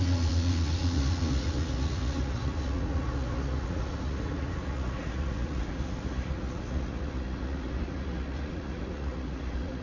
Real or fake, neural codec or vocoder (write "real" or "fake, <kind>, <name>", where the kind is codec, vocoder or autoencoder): fake, vocoder, Vocos